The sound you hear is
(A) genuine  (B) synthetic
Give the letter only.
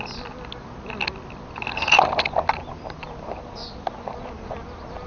A